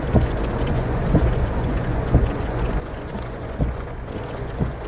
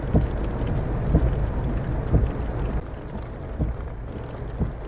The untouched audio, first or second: second